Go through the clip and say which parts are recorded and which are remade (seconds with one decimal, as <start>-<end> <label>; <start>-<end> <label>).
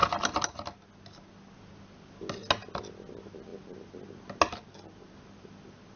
0.0-6.0 recorded